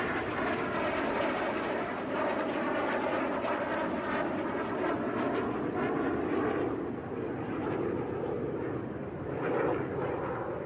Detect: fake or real real